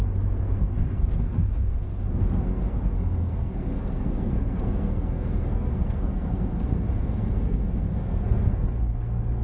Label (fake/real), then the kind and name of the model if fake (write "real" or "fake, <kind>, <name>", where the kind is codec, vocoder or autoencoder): fake, codec, SNAC